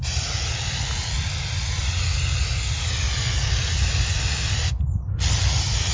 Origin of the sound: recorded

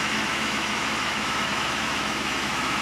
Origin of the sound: remade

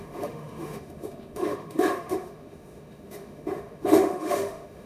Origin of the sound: remade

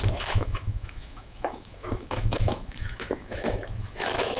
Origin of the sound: remade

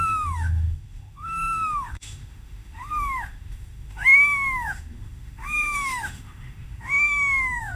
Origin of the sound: remade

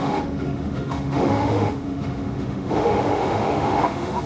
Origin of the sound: remade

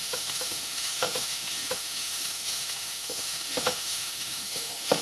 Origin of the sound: remade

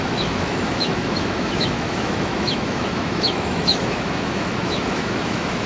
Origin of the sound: remade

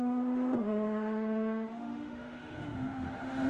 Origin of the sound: remade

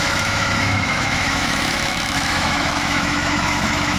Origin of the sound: remade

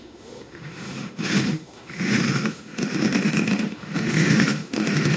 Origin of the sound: remade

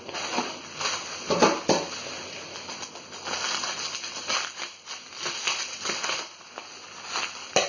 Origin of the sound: recorded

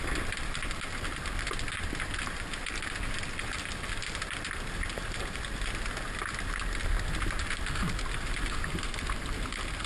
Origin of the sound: recorded